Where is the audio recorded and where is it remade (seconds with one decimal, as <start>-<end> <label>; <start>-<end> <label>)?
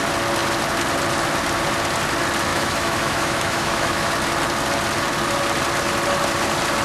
0.0-2.5 recorded; 2.5-4.1 remade; 4.1-6.8 recorded